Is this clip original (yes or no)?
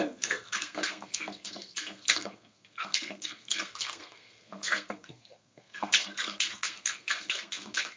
no